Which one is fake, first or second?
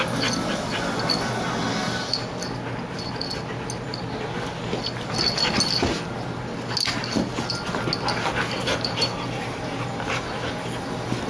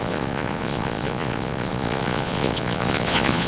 second